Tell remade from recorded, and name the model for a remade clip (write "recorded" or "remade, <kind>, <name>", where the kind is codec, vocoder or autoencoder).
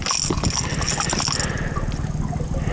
recorded